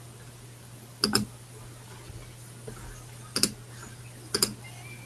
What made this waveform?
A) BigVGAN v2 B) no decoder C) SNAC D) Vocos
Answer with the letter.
B